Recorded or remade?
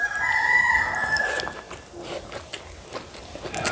recorded